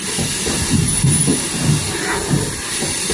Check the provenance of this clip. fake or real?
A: real